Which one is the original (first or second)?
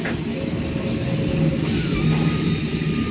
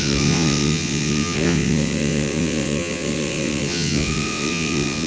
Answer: first